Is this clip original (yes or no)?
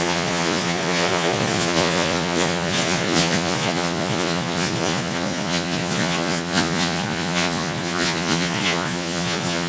no